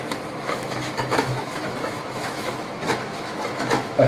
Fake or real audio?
fake